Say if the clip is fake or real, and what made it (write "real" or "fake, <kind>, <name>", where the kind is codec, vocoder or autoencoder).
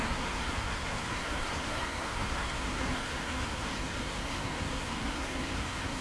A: fake, codec, SNAC